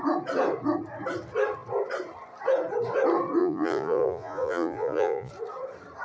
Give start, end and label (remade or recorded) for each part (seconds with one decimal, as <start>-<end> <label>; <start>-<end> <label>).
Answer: 0.0-3.4 recorded; 3.4-5.3 remade; 5.3-6.0 recorded